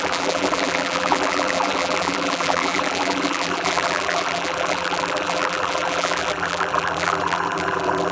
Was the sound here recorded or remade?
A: remade